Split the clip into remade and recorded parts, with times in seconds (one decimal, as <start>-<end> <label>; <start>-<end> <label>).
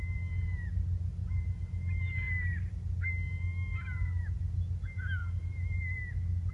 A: 0.0-6.5 recorded